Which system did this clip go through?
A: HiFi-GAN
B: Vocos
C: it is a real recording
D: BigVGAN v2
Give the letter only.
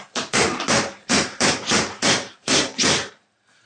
D